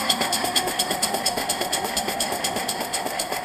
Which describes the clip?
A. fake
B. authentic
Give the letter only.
A